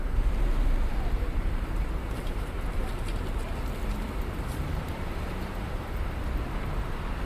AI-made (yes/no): yes